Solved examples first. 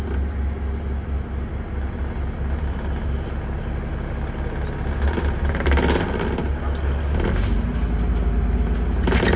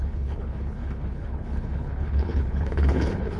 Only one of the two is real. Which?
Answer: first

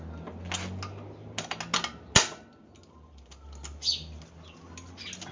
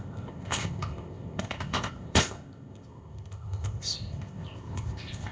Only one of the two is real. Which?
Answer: first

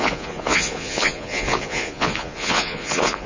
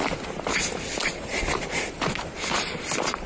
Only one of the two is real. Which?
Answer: second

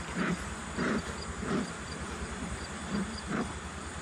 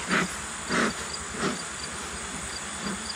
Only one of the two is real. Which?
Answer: second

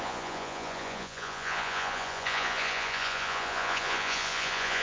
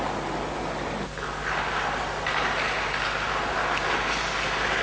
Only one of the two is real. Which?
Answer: second